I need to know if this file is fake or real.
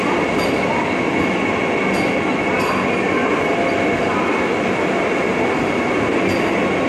real